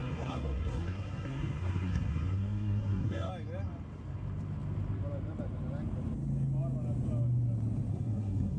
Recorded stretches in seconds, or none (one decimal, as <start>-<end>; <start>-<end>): 3.3-7.9